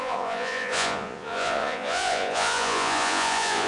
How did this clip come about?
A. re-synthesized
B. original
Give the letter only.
A